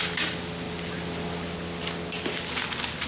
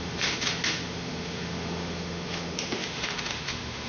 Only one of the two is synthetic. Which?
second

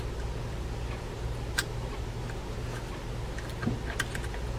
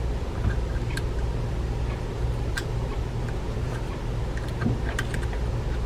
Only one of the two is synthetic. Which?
second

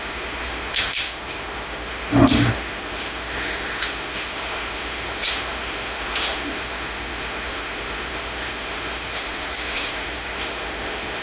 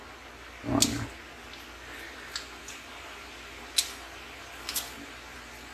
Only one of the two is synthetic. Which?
first